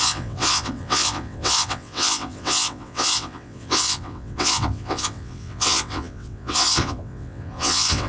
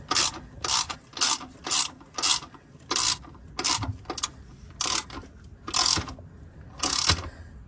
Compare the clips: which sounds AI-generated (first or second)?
first